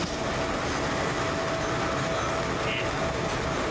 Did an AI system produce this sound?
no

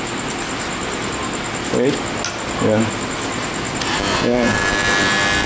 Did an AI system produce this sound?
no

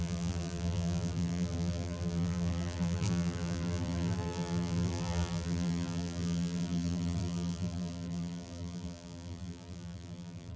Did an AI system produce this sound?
yes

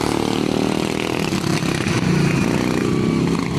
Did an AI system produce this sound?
no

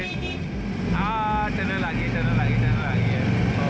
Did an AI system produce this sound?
no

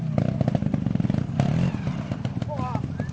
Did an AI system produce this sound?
no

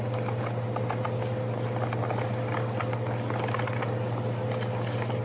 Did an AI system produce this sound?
no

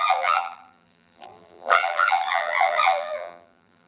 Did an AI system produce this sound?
yes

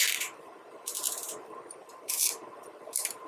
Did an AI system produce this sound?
yes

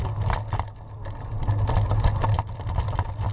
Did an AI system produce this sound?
no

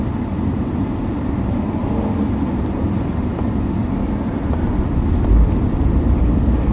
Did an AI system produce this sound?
yes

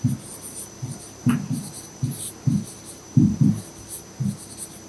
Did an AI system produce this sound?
yes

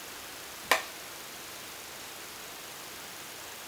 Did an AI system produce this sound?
no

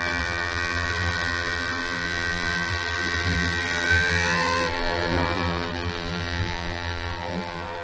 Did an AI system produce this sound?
yes